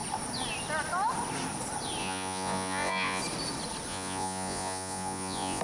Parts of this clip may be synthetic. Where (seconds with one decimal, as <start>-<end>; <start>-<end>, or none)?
2.0-3.2; 3.9-5.6